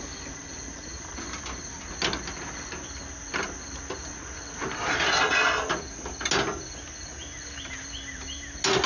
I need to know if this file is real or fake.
real